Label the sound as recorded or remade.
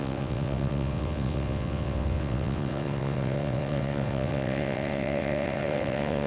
remade